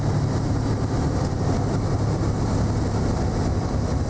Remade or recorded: recorded